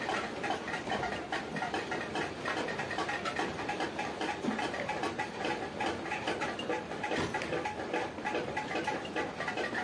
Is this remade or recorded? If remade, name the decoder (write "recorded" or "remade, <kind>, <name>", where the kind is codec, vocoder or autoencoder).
remade, vocoder, BigVGAN v2